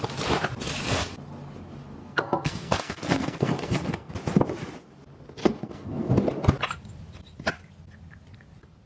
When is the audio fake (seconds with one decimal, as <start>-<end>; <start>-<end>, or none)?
2.0-4.1; 5.4-6.1